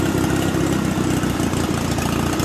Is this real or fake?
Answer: real